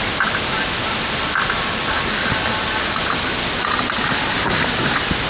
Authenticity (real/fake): real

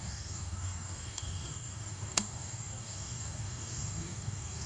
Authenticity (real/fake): fake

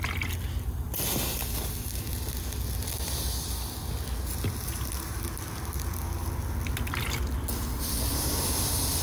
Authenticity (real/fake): real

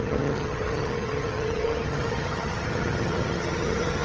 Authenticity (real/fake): fake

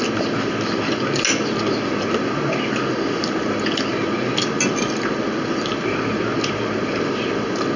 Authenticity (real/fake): real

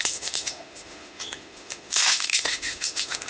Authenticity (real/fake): fake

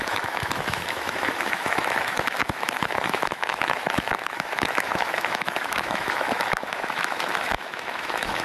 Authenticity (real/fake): fake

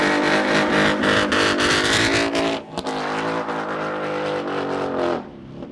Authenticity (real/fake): real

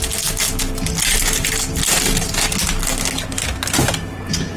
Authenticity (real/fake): real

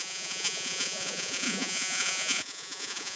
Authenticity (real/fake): fake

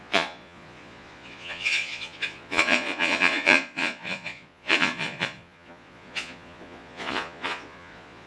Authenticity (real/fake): fake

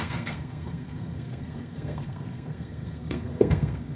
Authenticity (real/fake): fake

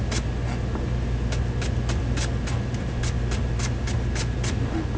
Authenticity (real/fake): real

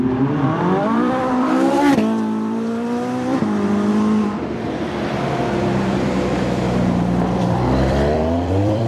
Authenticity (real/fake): fake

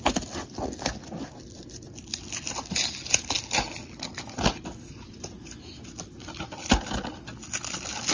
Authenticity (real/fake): real